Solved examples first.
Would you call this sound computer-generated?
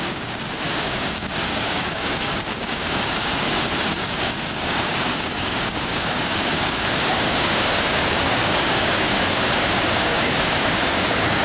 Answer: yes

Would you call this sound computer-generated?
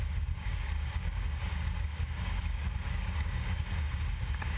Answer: yes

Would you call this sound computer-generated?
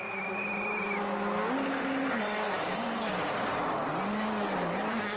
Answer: no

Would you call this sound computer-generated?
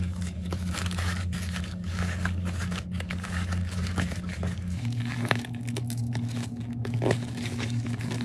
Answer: yes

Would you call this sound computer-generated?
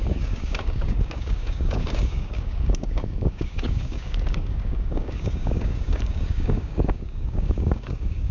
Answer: yes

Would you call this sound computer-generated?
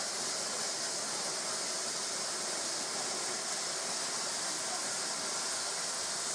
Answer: no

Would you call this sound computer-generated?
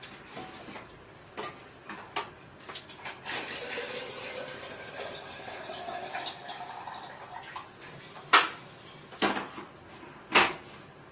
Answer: no